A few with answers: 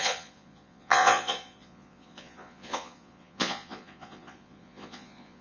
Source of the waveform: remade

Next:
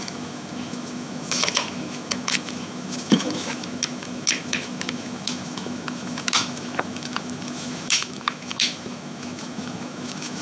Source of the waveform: remade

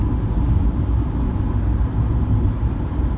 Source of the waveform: recorded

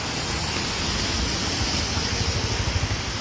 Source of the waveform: recorded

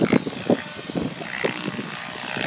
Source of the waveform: recorded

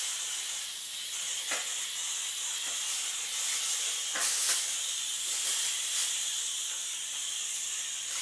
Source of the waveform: remade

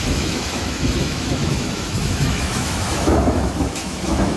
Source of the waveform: remade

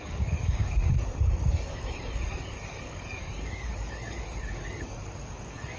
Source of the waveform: remade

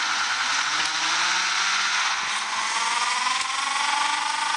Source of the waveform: remade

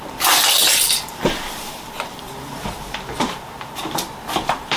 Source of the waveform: remade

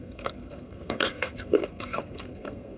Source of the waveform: remade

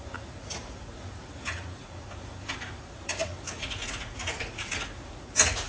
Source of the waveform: remade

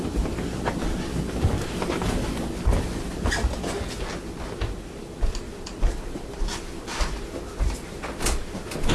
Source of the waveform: recorded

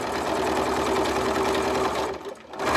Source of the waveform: recorded